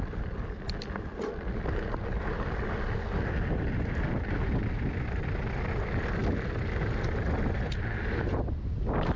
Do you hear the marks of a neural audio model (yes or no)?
no